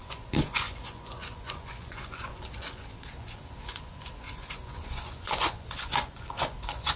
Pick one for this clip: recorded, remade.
remade